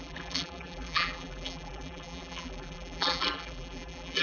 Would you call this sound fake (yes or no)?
yes